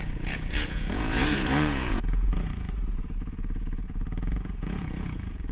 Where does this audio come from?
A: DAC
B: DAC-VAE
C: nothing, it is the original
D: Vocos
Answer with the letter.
D